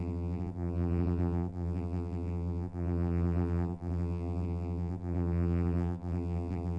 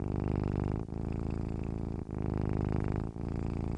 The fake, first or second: first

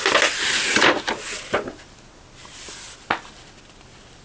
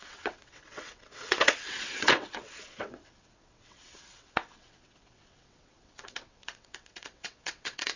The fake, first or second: second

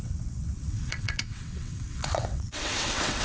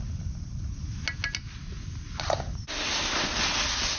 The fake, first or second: first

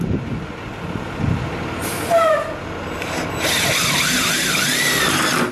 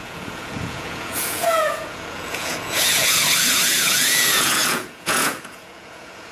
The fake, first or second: second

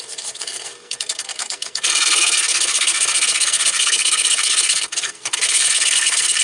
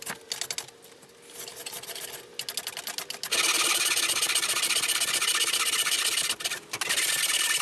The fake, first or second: first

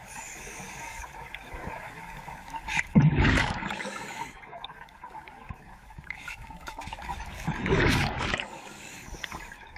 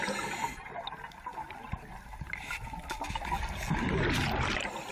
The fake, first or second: first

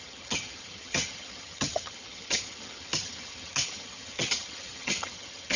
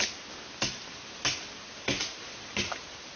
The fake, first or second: first